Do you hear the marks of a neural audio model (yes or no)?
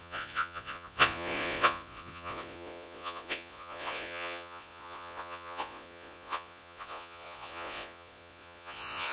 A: yes